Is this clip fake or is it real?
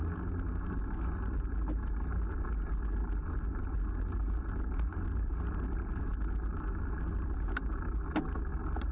real